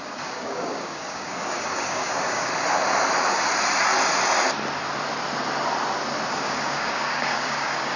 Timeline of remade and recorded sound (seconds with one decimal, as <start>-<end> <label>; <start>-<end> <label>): 0.0-2.5 remade; 2.5-6.3 recorded; 6.3-8.0 remade